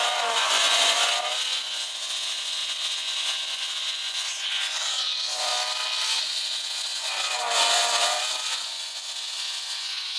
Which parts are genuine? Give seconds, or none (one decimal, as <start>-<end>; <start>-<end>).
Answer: 5.5-6.2